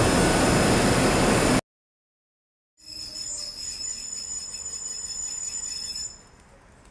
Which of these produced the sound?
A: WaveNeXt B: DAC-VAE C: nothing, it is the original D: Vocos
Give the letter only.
C